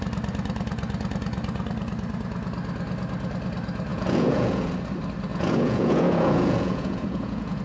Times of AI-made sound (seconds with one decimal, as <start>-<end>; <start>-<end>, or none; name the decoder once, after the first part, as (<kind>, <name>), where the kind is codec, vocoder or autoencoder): 3.9-4.7 (vocoder, Vocos); 5.3-7.6